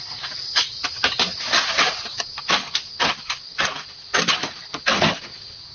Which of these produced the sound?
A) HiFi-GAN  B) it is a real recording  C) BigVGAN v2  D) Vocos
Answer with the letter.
B